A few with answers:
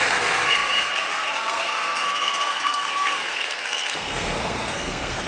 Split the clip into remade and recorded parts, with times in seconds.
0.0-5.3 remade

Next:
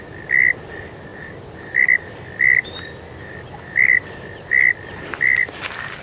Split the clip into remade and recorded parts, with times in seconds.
0.0-6.0 recorded

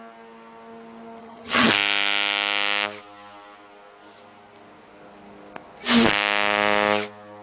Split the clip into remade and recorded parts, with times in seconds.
0.0-1.2 recorded; 1.2-1.7 remade; 1.7-7.4 recorded

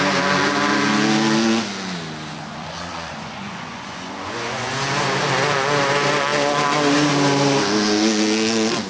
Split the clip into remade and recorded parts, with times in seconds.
0.0-2.3 recorded; 2.3-4.7 remade; 4.7-8.9 recorded

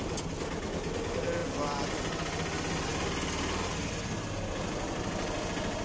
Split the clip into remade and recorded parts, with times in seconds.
0.0-5.8 recorded

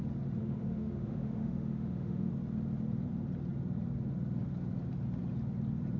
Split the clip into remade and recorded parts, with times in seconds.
0.0-0.4 recorded; 0.4-2.3 remade; 2.3-6.0 recorded